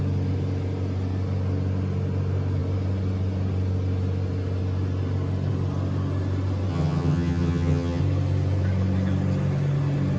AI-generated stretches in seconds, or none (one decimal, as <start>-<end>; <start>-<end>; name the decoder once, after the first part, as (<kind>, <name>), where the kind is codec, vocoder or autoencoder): 6.7-8.0 (vocoder, HiFi-GAN)